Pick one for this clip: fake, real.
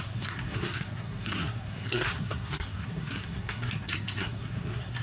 fake